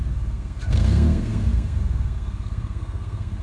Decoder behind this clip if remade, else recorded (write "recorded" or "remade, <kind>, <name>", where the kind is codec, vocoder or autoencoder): remade, codec, SNAC